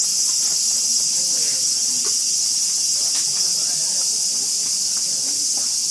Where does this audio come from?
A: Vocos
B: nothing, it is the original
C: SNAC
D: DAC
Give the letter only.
B